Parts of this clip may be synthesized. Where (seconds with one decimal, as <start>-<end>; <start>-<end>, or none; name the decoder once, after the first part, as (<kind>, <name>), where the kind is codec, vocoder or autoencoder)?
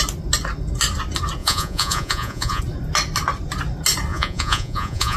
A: 1.4-2.6 (vocoder, Vocos); 4.1-5.2